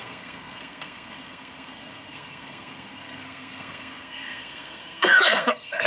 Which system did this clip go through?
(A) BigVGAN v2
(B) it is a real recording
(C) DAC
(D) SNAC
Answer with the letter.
D